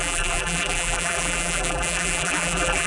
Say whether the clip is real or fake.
fake